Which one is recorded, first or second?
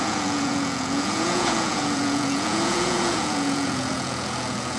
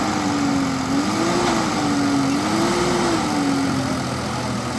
second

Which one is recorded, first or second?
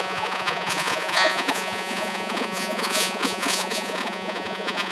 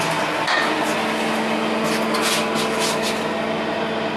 second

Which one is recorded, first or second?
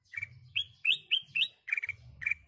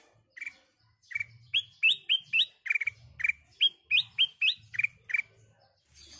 second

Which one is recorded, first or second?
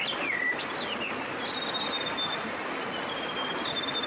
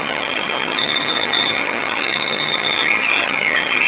first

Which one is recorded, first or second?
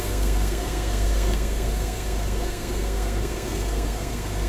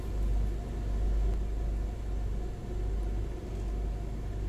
second